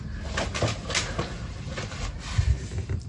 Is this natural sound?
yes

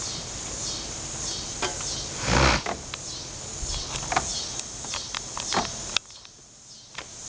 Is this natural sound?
yes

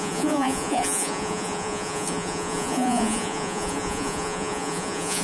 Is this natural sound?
no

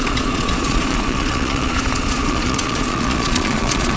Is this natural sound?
no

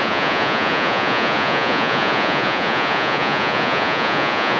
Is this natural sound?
no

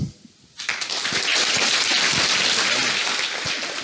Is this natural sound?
yes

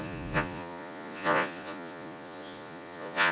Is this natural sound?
no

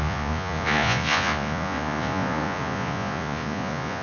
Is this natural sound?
no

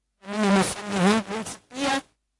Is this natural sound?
no